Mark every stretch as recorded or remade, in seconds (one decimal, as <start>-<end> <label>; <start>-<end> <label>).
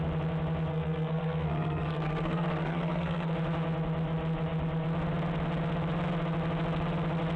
0.0-0.7 recorded; 0.7-3.3 remade; 3.3-7.4 recorded